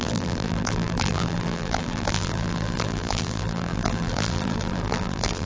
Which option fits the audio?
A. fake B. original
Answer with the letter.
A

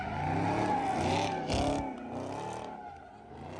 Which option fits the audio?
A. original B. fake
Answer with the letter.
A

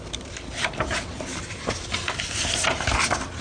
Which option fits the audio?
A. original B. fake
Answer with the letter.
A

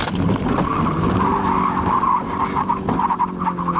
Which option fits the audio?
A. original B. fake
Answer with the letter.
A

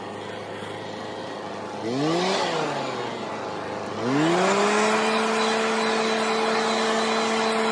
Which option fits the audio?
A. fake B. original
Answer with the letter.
B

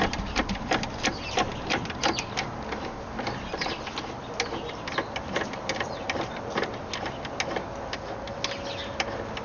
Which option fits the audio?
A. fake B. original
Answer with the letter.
B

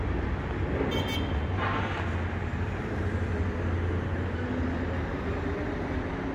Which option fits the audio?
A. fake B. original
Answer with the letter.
B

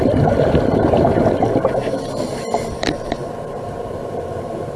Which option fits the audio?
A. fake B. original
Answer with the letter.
B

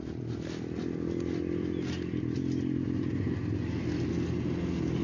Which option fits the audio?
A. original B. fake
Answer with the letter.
A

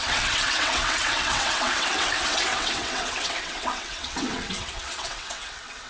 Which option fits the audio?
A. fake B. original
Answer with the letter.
A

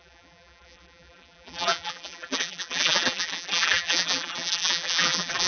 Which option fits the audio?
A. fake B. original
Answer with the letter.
A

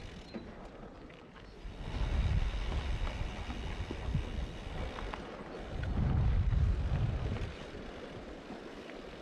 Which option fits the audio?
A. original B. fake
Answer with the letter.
A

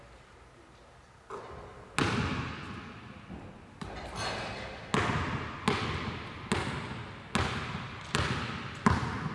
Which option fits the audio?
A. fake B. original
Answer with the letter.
B